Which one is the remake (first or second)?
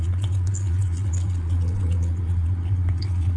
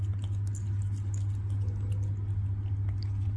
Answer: first